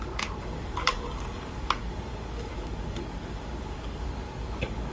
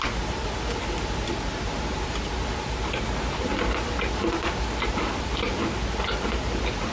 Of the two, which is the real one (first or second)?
second